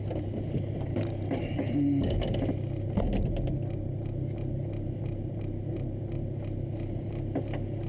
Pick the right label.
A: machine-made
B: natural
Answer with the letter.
B